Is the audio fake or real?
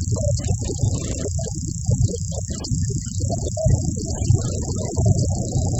fake